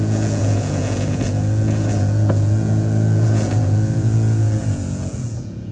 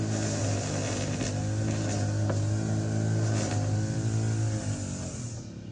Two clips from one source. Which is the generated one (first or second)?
first